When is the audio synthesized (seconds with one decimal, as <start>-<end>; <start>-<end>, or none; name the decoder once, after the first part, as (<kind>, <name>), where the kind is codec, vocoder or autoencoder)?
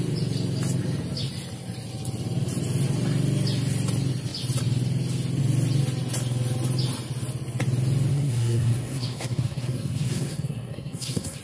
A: 8.1-11.4 (codec, SNAC)